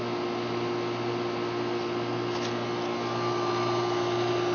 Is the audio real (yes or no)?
yes